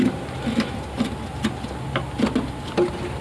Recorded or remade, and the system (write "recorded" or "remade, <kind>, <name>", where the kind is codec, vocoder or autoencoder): recorded